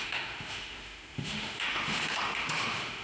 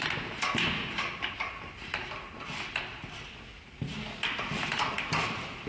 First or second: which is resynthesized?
first